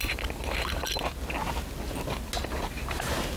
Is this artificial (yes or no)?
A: no